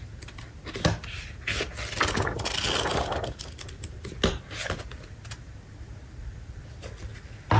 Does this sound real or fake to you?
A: real